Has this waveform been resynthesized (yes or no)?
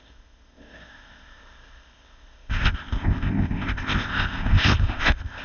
yes